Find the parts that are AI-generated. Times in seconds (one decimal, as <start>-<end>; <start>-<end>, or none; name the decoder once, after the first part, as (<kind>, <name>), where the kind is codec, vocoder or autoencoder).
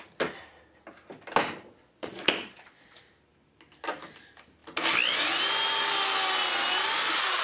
1.8-3.0 (vocoder, Vocos)